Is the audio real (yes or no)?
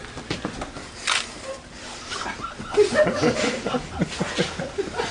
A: yes